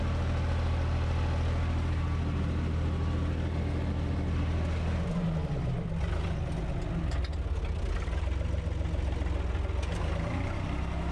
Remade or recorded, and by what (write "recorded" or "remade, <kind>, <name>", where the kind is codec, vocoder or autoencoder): recorded